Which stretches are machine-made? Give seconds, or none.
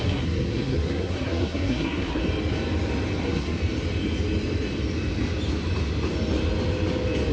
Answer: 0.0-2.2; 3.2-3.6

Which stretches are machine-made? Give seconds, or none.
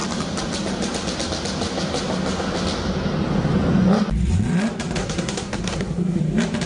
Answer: 5.0-6.2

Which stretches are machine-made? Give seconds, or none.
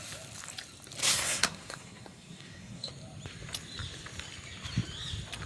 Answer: 1.0-2.9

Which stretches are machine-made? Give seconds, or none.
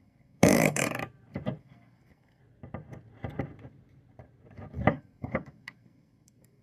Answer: 0.0-1.0; 1.6-2.4; 4.9-6.6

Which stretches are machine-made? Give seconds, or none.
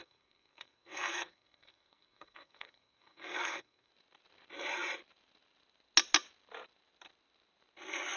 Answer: 0.0-3.9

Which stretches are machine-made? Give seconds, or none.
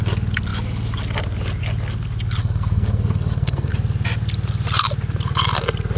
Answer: 2.4-3.7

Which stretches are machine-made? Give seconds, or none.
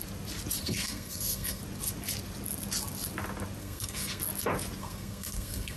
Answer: 0.6-1.6; 3.6-4.2; 4.8-5.8